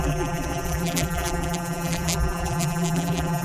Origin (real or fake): fake